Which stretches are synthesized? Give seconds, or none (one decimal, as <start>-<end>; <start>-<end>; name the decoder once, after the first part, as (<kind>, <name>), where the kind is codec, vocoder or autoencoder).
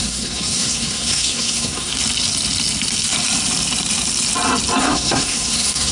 0.0-1.9 (codec, SNAC); 4.8-5.9